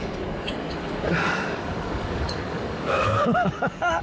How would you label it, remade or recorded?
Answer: remade